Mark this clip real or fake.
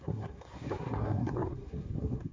fake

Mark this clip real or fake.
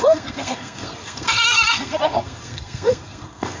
fake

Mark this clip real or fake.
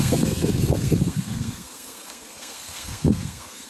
fake